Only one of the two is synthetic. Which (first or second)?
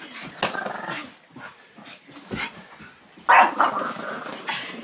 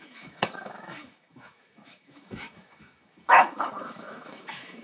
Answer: second